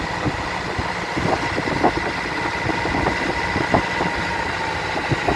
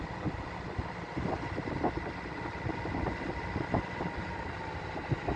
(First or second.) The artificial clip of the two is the second